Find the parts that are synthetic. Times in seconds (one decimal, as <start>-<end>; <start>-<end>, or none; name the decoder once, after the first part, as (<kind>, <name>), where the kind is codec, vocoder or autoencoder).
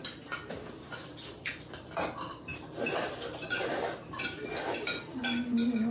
0.5-1.4 (vocoder, BigVGAN v2); 2.3-3.1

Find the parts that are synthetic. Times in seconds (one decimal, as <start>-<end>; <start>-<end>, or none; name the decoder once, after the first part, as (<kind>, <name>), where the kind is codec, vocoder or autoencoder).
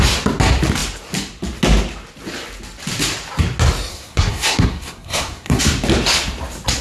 3.9-5.6 (codec, SNAC)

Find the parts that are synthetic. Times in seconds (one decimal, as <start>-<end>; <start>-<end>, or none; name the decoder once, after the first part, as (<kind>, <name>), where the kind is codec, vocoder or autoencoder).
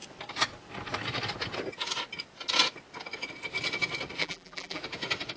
4.2-4.8 (vocoder, BigVGAN v2)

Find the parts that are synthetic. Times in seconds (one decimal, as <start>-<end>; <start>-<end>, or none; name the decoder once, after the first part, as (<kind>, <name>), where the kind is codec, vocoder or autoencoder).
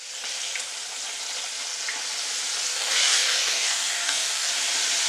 2.7-4.5 (codec, DAC)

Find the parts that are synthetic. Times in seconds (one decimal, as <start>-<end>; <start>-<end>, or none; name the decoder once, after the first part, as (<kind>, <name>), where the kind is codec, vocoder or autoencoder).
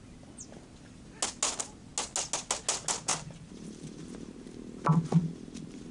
3.1-4.0 (vocoder, BigVGAN v2)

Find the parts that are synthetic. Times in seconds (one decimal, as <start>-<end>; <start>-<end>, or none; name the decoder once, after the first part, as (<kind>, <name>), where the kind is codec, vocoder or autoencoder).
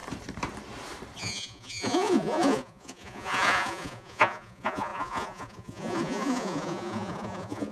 1.2-7.7 (vocoder, Vocos)